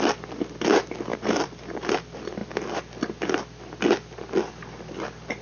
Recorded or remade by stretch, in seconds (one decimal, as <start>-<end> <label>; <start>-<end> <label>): 0.0-1.1 recorded; 1.1-1.7 remade; 1.7-5.4 recorded